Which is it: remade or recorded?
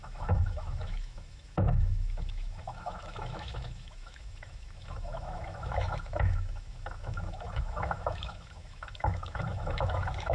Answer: remade